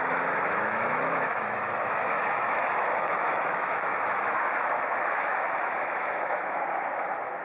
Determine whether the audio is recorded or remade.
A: remade